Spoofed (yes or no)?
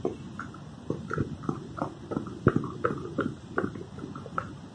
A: no